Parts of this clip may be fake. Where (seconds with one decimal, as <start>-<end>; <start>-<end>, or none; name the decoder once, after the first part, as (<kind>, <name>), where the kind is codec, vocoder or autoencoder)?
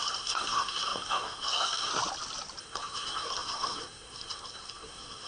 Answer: 0.0-1.9 (codec, SNAC); 2.6-5.3